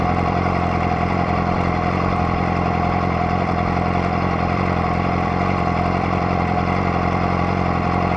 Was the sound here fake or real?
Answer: fake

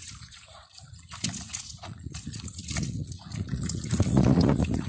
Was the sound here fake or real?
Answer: fake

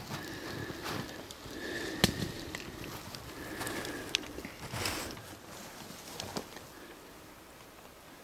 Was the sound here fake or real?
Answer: real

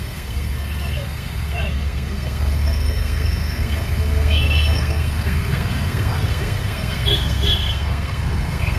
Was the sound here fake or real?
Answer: fake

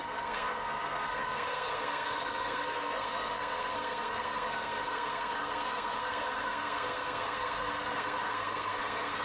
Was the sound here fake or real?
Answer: fake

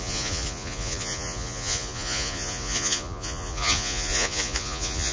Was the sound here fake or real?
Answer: fake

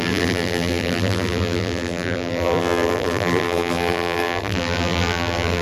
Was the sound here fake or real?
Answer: fake